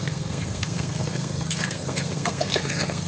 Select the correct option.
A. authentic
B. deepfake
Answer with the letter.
B